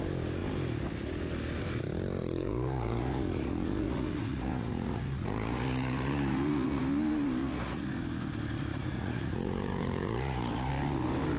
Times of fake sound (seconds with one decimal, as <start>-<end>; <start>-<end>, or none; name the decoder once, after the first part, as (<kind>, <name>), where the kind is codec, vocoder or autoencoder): 2.2-6.8 (vocoder, Vocos); 7.4-7.9; 8.7-10.7